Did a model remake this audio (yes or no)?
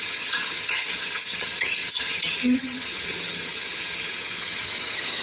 yes